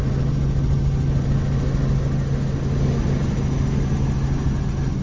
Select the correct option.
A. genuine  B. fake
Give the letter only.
A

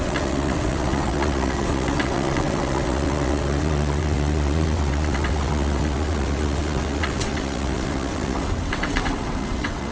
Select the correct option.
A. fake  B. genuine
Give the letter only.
A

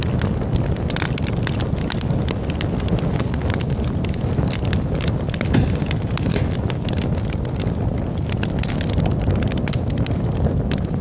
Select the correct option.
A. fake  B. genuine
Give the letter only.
B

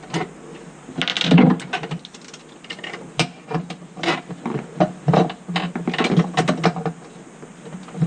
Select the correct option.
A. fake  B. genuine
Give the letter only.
B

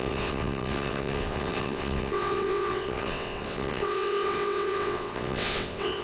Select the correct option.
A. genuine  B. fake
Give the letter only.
B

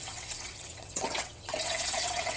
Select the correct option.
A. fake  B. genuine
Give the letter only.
A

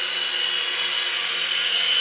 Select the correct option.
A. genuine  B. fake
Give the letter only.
A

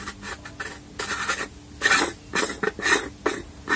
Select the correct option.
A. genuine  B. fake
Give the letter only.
A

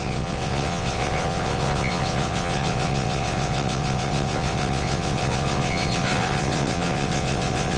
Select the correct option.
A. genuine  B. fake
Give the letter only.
B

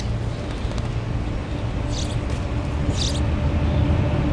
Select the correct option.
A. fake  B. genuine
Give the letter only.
B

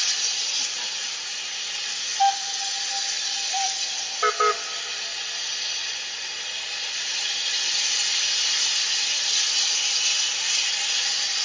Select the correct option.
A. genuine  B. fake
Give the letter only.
A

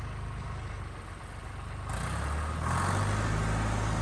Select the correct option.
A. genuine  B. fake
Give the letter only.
A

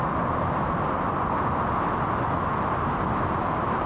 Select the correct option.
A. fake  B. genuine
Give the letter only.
B